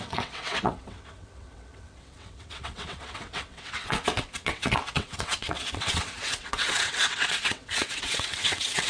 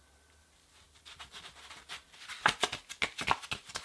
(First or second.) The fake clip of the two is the first